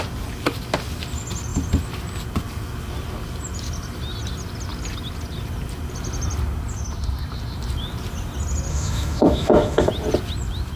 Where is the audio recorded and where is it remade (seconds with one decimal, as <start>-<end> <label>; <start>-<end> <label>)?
0.0-8.7 recorded; 8.7-9.9 remade; 9.9-10.8 recorded